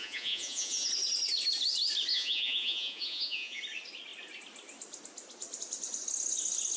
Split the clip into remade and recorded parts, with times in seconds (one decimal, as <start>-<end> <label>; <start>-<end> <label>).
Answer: 0.0-0.9 remade; 0.9-2.1 recorded; 2.1-3.6 remade; 3.6-6.8 recorded